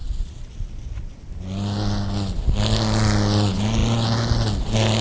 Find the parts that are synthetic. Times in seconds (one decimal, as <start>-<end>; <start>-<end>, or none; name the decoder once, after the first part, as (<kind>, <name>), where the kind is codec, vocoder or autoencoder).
none